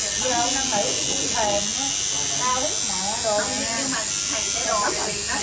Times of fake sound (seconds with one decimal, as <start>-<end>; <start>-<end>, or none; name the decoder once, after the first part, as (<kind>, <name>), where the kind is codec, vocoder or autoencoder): none